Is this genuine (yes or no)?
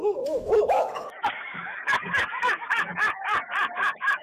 no